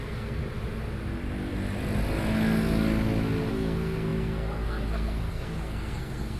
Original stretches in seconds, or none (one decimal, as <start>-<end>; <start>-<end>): 0.4-3.5